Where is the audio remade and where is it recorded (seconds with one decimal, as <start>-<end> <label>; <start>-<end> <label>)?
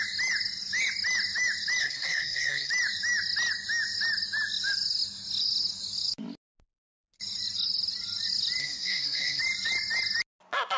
0.0-1.8 recorded; 1.8-2.7 remade; 2.7-8.6 recorded; 8.6-9.4 remade; 9.4-10.8 recorded